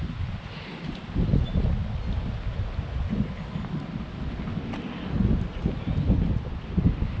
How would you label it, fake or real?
real